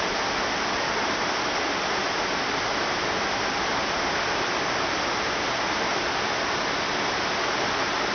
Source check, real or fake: real